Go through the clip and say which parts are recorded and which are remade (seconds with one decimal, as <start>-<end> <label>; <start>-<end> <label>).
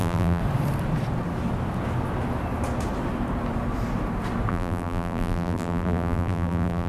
0.0-0.4 remade; 0.4-4.5 recorded; 4.5-6.9 remade